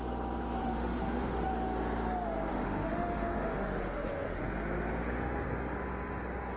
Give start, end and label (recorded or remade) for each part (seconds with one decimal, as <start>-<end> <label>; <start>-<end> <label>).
0.0-0.6 recorded; 0.6-1.5 remade; 1.5-2.5 recorded; 2.5-4.4 remade; 4.4-6.6 recorded